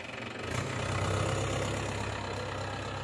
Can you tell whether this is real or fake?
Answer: real